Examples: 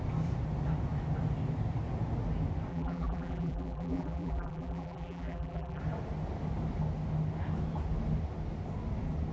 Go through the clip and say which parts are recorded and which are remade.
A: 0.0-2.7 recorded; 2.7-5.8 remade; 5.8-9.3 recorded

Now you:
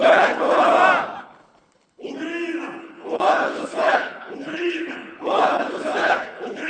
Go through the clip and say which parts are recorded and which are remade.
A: 0.0-0.7 remade; 0.7-1.2 recorded; 1.2-2.1 remade; 2.1-2.8 recorded; 2.8-6.7 remade

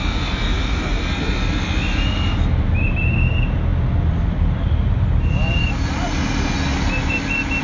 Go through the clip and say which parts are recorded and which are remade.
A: 0.0-7.6 recorded

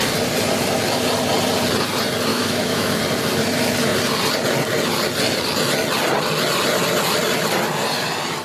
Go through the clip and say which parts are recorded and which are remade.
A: 0.0-2.3 recorded; 2.3-3.0 remade; 3.0-8.4 recorded

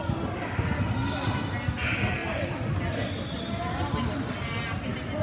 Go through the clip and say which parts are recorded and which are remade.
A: 0.0-5.2 recorded